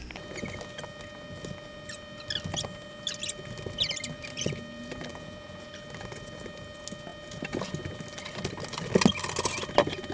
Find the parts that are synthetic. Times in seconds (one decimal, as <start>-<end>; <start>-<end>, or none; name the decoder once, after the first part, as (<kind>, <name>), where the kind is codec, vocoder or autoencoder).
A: 5.1-5.7 (vocoder, Vocos)